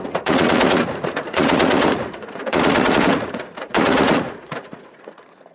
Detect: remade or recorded remade